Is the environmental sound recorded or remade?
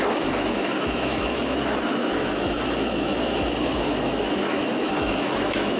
remade